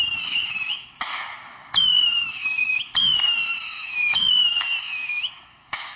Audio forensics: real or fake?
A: fake